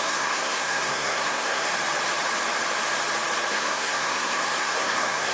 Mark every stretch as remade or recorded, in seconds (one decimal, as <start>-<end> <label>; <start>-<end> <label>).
0.0-1.7 remade; 1.7-3.5 recorded; 3.5-5.3 remade